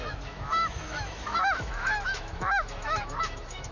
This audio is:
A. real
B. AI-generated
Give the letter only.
B